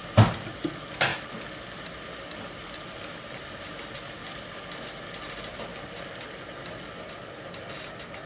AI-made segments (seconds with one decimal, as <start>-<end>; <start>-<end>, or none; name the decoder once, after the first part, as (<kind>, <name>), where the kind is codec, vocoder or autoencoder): none